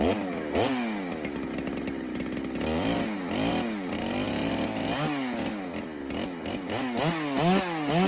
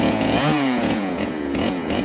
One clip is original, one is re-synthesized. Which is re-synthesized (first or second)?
second